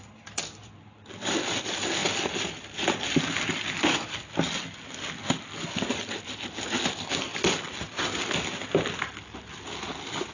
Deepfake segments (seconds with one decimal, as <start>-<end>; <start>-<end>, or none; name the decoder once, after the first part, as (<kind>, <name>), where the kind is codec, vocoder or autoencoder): none